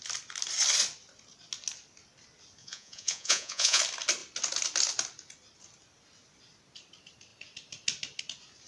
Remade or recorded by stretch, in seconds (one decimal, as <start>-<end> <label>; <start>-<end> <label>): 0.0-2.6 recorded; 2.6-3.8 remade; 3.8-8.7 recorded